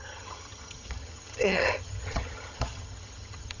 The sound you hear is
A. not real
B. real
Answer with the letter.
A